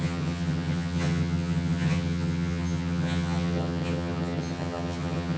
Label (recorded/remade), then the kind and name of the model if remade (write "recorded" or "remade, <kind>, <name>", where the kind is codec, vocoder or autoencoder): remade, vocoder, HiFi-GAN